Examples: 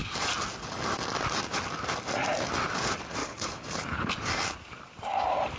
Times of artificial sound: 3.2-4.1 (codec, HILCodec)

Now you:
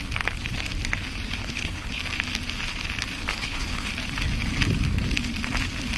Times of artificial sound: 1.4-2.0 (codec, HILCodec); 3.3-3.9

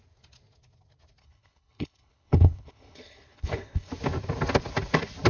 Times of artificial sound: 1.2-3.9 (codec, HILCodec)

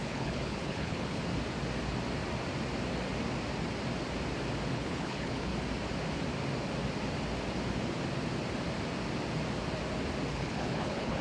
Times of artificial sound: 0.0-1.2 (codec, HILCodec); 4.7-5.5; 10.3-11.2

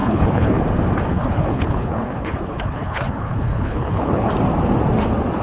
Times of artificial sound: 0.0-0.6 (codec, HILCodec); 1.1-4.3

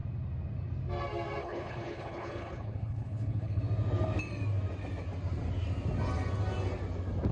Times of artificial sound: 1.4-3.6 (codec, HILCodec)

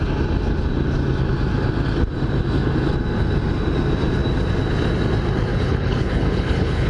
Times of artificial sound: 5.5-6.9 (codec, HILCodec)

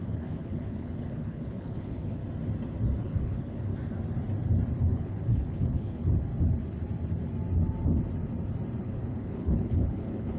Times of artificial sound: 0.0-2.2 (codec, HILCodec); 3.0-3.7; 4.8-6.1; 8.8-10.4